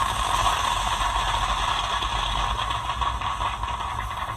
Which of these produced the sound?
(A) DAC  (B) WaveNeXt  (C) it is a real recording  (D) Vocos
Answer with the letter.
C